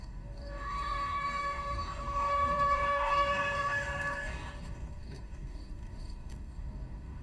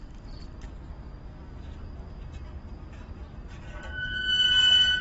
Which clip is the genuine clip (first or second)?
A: second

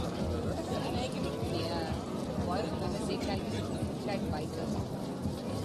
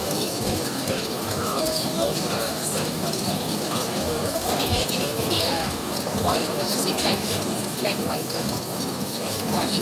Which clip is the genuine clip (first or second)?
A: first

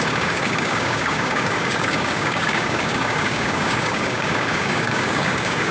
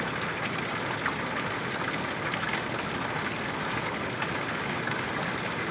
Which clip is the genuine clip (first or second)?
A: second